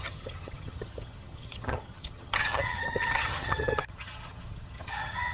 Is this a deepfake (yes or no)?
yes